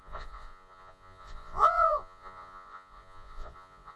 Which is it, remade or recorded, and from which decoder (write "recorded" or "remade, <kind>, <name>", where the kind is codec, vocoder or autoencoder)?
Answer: remade, vocoder, Vocos